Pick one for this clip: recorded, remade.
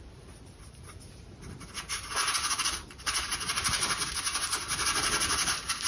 remade